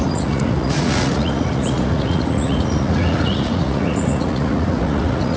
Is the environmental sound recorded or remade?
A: remade